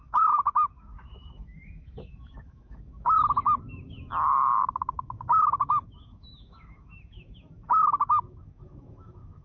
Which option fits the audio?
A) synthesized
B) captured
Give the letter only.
A